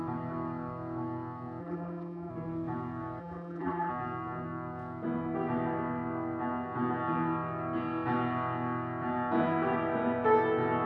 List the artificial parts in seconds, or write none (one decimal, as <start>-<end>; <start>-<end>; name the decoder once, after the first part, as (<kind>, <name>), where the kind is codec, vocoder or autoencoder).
1.6-2.3 (vocoder, BigVGAN v2); 3.2-3.9